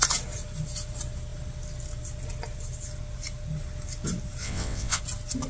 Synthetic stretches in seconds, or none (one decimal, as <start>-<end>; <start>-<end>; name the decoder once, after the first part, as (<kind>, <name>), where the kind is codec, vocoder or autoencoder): 4.4-5.0 (vocoder, WaveNeXt)